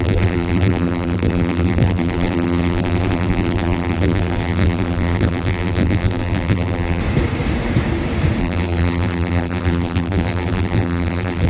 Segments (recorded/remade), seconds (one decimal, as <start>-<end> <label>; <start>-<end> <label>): 0.0-7.0 remade; 7.0-8.4 recorded; 8.4-11.5 remade